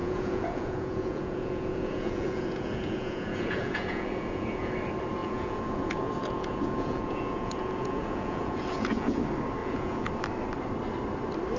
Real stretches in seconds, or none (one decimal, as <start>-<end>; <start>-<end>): 4.7-5.2; 9.2-9.6; 10.1-11.6

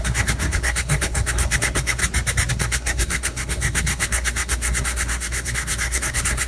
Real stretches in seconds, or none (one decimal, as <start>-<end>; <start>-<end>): 2.0-2.5